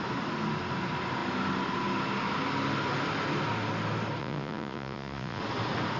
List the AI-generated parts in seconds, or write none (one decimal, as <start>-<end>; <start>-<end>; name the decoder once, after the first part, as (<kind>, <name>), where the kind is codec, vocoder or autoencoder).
4.2-5.4 (vocoder, Vocos)